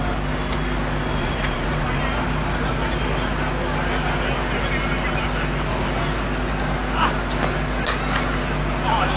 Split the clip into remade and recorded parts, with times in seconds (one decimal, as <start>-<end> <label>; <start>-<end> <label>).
0.0-1.2 recorded; 1.2-2.0 remade; 2.0-9.2 recorded